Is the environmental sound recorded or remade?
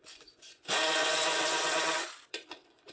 remade